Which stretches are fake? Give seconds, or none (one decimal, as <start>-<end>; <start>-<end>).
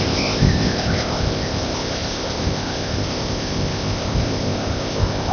0.0-5.3